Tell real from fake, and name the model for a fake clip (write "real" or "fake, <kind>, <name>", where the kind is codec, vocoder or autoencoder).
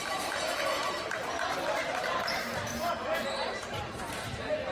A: fake, vocoder, BigVGAN v2